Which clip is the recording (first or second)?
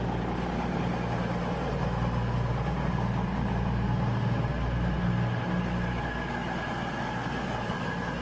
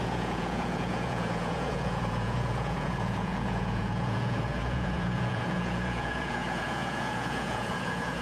first